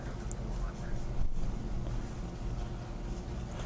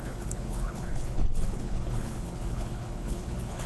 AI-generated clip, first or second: second